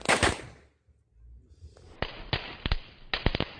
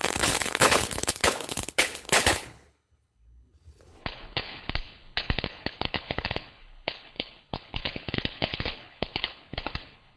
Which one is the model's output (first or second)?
second